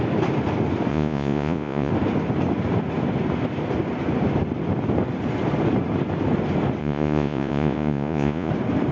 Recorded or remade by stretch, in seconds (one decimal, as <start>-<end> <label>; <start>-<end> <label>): 0.0-0.9 recorded; 0.9-1.9 remade; 1.9-6.8 recorded; 6.8-8.5 remade; 8.5-8.9 recorded